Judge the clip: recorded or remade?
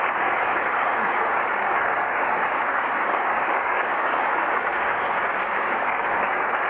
remade